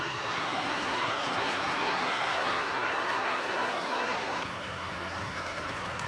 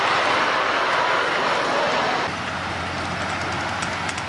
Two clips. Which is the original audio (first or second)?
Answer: second